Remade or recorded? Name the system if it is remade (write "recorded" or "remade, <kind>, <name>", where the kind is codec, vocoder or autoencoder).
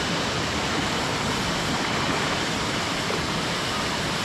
recorded